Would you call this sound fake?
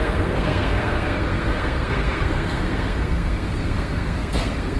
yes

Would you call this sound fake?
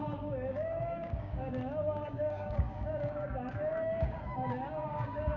yes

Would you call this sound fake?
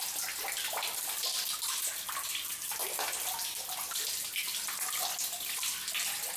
no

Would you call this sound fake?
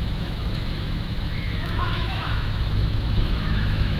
yes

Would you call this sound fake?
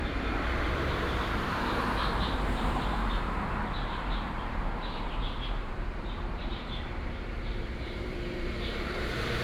yes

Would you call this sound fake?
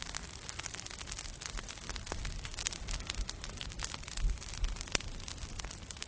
no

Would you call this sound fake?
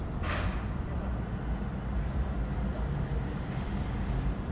no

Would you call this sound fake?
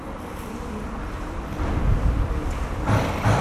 no